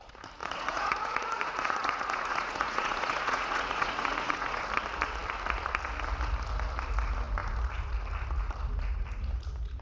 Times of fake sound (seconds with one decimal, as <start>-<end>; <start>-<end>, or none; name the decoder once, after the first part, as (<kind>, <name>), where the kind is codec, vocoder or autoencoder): 0.4-4.6 (vocoder, Vocos)